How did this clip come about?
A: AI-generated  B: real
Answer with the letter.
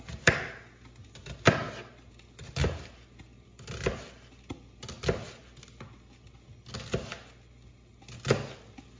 B